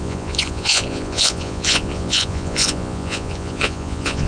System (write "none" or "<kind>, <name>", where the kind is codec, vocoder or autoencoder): vocoder, Vocos